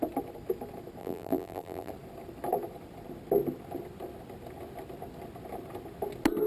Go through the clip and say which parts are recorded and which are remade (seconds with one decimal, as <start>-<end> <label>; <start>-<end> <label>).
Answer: 0.0-1.0 recorded; 1.0-1.9 remade; 1.9-6.5 recorded